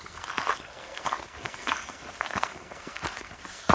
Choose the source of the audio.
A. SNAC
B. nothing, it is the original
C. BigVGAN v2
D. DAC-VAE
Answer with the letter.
A